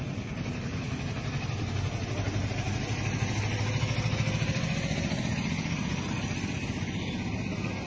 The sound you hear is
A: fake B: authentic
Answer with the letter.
B